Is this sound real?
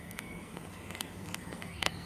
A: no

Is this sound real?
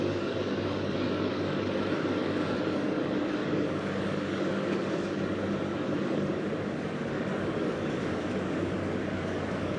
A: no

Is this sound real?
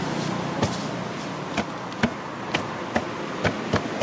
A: yes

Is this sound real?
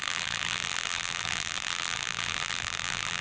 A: no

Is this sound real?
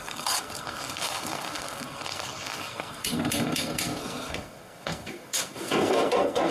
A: no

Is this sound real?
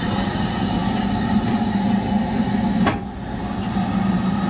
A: yes